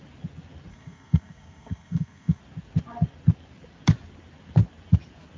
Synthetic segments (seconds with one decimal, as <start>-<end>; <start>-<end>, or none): 0.7-2.4